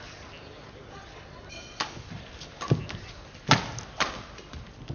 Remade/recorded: recorded